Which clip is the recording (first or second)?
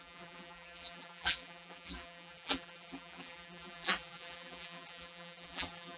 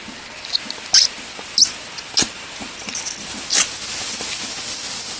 second